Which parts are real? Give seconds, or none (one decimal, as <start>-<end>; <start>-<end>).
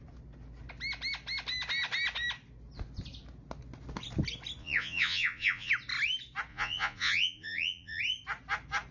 0.0-4.6; 5.7-6.5; 8.0-8.9